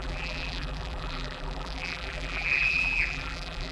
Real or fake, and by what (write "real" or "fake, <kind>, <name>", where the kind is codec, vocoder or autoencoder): fake, vocoder, BigVGAN v2